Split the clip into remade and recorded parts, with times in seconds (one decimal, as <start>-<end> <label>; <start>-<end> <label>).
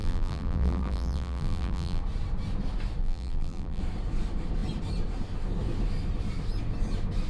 0.0-2.0 remade; 2.0-3.0 recorded; 3.0-3.8 remade; 3.8-7.3 recorded